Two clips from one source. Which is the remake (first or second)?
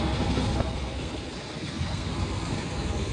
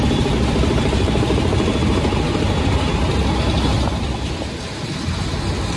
first